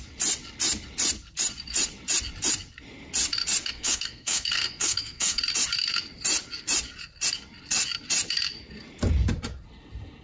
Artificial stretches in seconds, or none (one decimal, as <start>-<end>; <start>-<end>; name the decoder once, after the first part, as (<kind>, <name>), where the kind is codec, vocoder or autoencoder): 3.6-5.4 (codec, SNAC)